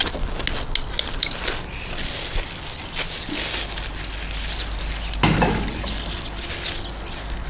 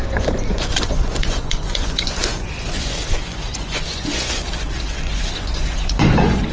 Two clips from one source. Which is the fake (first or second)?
second